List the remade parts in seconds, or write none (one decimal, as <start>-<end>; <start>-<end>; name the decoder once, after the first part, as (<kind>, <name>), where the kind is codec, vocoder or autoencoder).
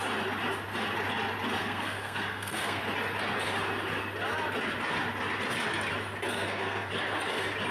1.6-2.8 (codec, SNAC); 6.3-6.9